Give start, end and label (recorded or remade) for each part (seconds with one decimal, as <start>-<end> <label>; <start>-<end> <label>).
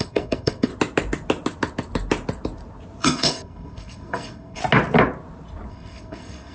0.0-0.7 remade; 0.7-3.0 recorded; 3.0-4.6 remade; 4.6-5.7 recorded; 5.7-6.5 remade